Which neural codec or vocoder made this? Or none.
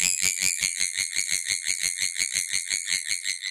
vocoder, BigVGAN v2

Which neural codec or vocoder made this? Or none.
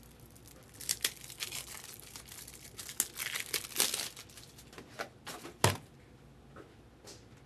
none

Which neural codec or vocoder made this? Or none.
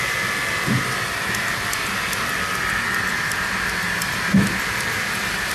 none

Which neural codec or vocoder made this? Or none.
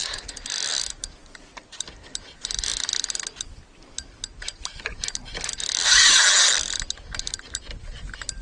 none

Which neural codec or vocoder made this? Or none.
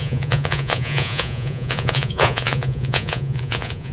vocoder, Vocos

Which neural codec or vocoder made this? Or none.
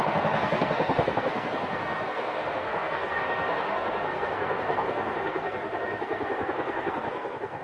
codec, SNAC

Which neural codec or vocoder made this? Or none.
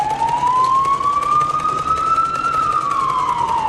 none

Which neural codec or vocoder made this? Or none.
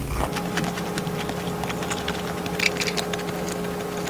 none